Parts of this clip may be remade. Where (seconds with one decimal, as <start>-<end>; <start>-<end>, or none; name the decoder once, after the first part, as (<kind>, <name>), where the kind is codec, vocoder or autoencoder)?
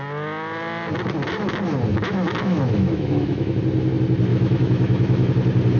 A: 1.9-3.6 (autoencoder, DAC-VAE); 4.3-5.3